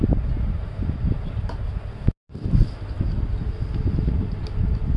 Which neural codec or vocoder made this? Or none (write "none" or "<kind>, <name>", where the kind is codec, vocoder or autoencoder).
none